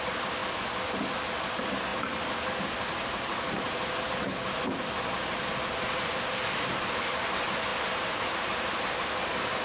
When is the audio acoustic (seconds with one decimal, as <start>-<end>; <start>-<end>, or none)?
0.0-9.6